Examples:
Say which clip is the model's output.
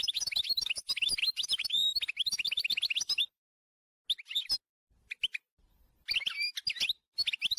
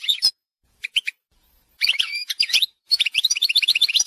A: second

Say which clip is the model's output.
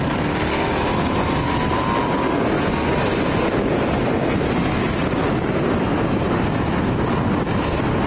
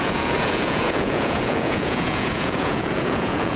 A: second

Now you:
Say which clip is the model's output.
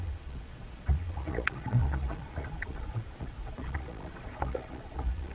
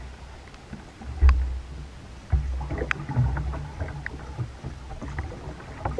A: first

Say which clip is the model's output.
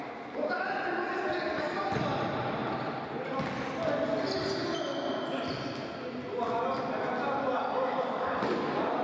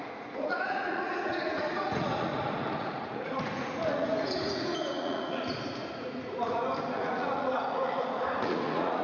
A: second